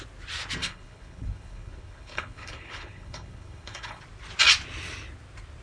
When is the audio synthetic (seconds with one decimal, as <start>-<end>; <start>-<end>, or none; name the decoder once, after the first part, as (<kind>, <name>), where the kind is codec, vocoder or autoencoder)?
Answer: 0.6-4.0 (codec, HILCodec)